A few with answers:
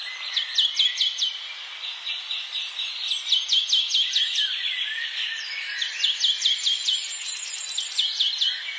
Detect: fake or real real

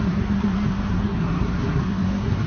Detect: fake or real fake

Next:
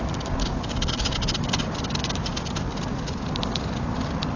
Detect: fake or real real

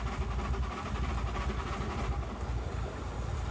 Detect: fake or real real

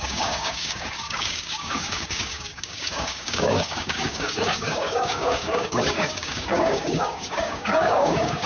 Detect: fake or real fake